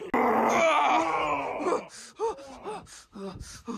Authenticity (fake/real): real